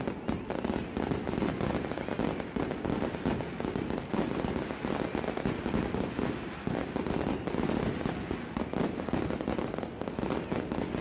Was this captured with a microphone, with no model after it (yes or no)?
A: yes